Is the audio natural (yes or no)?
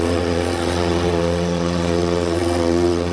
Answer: no